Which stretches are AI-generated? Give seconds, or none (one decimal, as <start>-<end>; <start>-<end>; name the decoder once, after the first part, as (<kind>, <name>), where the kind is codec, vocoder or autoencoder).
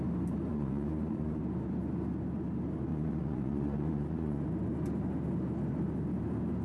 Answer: 0.5-1.4 (vocoder, Vocos); 2.9-4.4